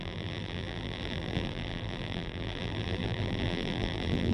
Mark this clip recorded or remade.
remade